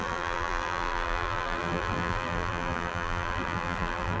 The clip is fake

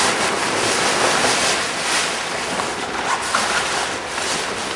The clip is real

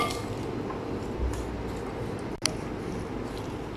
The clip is real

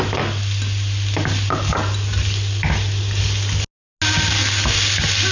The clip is real